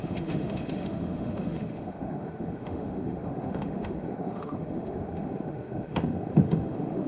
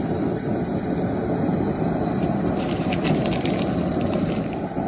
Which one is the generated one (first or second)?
first